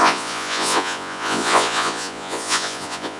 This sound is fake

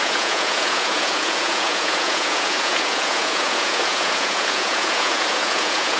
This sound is fake